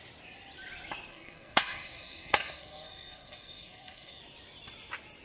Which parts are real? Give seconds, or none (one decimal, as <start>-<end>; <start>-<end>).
0.0-1.1; 4.2-5.2